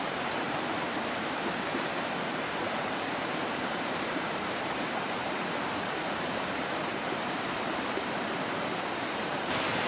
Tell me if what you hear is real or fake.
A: fake